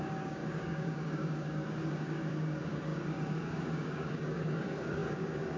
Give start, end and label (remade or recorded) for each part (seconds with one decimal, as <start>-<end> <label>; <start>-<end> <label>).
0.0-5.6 remade